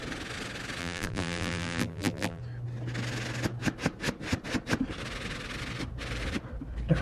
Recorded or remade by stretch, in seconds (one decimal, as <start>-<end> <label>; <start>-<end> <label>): 0.0-0.8 recorded; 0.8-2.4 remade; 2.4-7.0 recorded